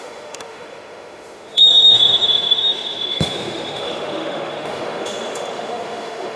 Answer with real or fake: fake